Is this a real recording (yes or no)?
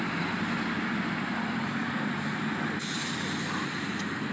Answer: yes